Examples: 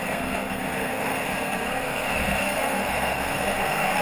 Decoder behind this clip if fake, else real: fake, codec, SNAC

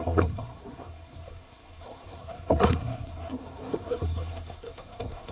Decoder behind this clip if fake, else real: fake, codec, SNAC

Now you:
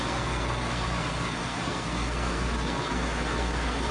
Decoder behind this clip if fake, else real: fake, codec, SNAC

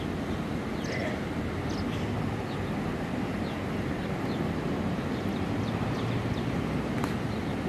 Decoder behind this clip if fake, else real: real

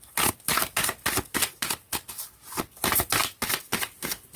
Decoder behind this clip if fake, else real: real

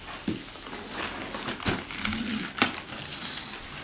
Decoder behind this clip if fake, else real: real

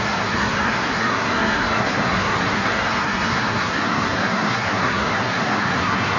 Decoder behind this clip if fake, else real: fake, codec, SNAC